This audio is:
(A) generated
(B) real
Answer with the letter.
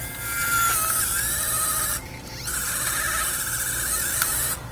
A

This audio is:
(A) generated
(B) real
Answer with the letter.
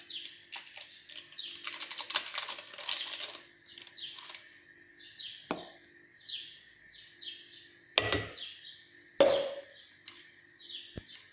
B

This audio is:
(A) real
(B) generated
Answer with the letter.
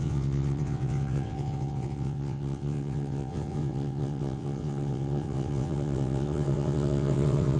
B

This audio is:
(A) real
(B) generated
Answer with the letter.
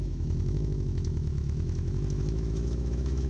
B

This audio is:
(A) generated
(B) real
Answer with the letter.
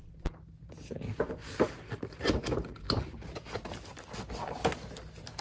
B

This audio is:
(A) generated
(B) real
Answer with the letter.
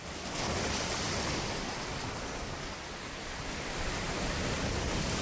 B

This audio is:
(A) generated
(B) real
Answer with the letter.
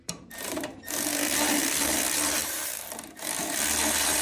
A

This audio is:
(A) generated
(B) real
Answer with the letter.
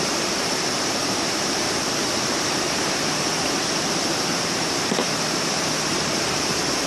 A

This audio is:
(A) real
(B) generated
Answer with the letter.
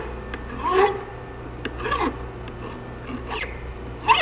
A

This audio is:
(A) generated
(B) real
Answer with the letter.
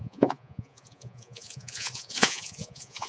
A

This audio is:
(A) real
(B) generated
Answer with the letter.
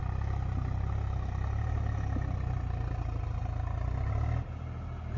A